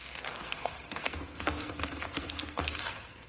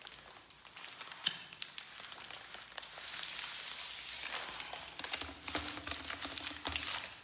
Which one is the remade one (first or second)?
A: first